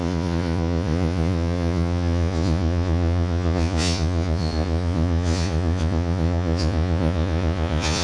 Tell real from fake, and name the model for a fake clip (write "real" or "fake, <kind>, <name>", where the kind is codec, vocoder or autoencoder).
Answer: fake, vocoder, Vocos